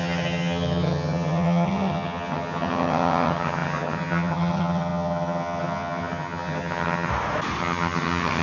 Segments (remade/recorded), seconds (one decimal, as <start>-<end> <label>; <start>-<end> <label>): 0.0-7.1 remade; 7.1-7.6 recorded; 7.6-8.4 remade